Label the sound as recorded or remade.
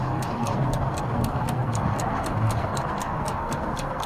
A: remade